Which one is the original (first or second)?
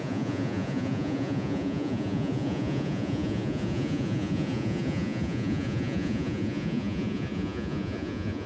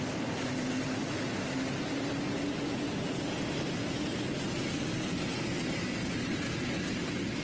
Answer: second